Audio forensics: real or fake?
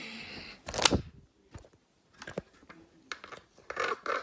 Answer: real